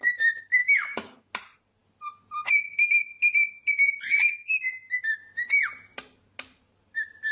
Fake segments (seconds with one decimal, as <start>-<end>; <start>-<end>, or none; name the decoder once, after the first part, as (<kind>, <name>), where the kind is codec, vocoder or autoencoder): 0.6-1.3 (codec, DAC)